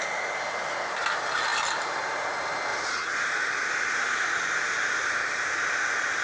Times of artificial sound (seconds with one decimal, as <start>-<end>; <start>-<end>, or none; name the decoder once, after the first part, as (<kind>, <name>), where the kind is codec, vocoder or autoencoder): 2.7-4.2 (vocoder, BigVGAN v2)

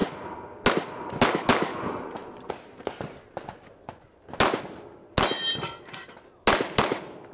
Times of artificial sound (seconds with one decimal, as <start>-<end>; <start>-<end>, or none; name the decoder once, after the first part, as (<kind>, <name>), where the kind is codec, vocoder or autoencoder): 1.7-2.5 (vocoder, Vocos); 3.3-4.1

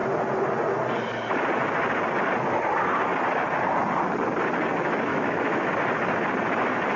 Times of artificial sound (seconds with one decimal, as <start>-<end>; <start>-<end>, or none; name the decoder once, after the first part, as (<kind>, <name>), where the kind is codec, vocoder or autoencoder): 5.1-5.7 (autoencoder, DAC-VAE)

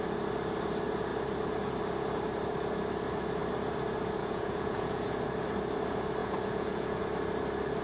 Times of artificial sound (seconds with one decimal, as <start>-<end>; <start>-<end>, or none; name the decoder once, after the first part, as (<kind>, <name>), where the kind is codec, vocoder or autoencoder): 4.2-5.1 (vocoder, Vocos); 6.2-7.0